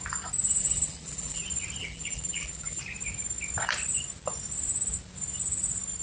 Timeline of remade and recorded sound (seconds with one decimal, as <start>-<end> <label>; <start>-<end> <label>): 0.0-0.6 recorded; 0.6-1.4 remade; 1.4-1.8 recorded; 1.8-2.8 remade; 2.8-6.0 recorded